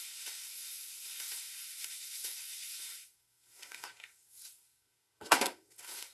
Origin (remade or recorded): remade